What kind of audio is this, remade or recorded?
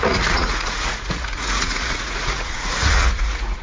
remade